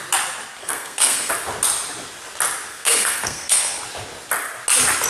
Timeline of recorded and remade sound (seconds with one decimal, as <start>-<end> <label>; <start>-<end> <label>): 0.0-0.6 recorded; 0.6-1.3 remade; 1.3-2.7 recorded; 2.7-3.8 remade; 3.8-5.1 recorded